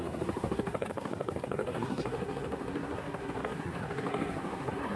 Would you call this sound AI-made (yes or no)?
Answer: yes